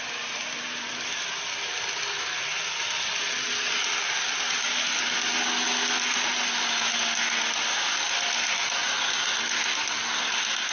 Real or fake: real